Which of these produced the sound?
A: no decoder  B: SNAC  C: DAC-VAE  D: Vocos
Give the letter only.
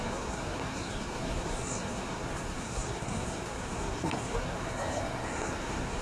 B